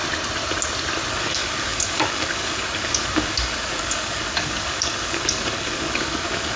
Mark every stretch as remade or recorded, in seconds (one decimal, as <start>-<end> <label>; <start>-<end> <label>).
0.0-1.1 recorded; 1.1-6.6 remade